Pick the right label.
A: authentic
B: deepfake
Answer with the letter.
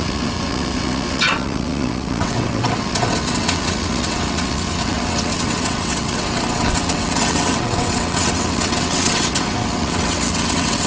B